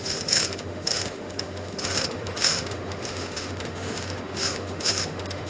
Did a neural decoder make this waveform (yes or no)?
yes